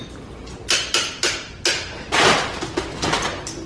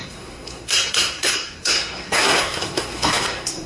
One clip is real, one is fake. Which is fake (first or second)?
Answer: second